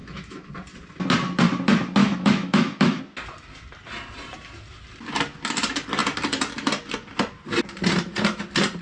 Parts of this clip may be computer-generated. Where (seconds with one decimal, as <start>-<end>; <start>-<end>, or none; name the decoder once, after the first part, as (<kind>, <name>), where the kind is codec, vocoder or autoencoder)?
0.0-0.5 (autoencoder, DAC-VAE); 2.0-3.0